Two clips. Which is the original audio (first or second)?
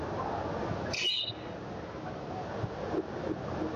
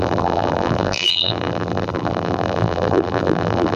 first